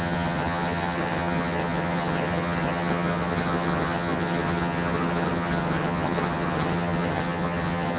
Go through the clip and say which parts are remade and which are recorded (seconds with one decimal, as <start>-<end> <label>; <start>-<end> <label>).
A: 0.0-8.0 remade